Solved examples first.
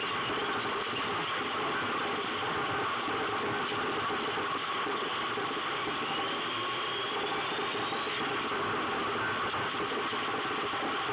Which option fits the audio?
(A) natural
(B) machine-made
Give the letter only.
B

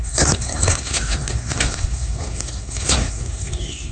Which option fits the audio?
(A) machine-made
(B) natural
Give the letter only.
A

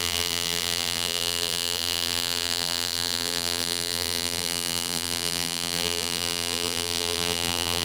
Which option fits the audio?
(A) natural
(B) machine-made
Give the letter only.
B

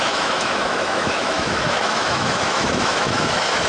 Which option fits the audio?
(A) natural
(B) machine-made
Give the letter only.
B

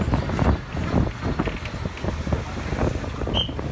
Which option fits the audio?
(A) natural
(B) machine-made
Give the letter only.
A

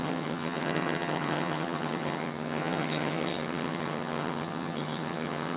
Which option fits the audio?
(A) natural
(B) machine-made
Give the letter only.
B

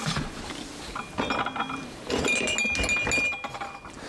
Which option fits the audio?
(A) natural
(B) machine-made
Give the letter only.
A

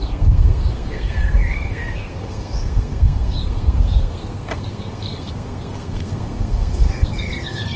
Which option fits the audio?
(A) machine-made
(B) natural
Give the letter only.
A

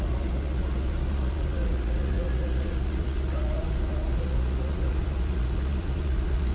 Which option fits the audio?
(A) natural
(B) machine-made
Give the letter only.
B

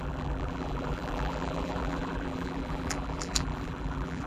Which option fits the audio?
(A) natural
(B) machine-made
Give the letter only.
B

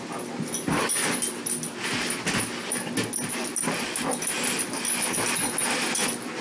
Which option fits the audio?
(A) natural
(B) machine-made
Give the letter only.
A